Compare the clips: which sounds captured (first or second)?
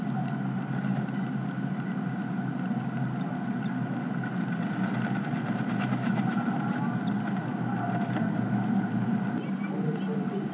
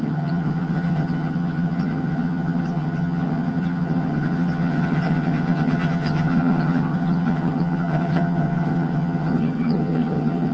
first